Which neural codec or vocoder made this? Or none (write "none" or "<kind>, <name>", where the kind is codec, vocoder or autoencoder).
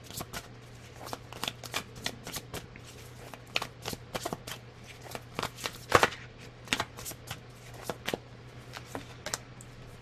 none